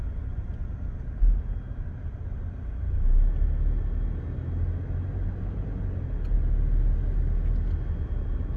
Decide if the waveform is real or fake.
real